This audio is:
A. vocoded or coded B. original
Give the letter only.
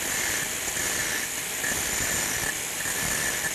B